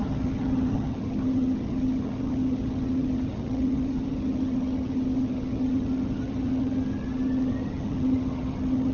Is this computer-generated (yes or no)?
yes